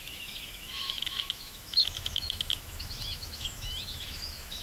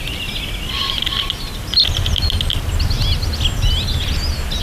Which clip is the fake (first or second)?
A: first